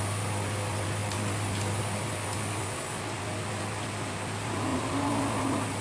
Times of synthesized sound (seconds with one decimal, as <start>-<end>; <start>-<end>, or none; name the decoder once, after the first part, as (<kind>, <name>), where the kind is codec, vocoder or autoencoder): none